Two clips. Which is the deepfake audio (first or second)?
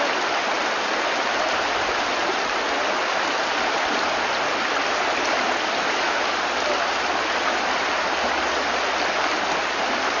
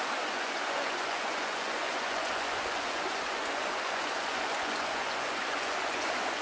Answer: second